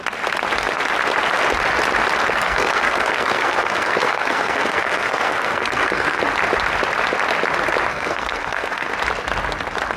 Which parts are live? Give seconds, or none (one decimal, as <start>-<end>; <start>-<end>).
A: 0.0-2.2; 6.2-7.9; 8.9-10.0